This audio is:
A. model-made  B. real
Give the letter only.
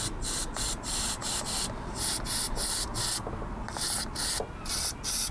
B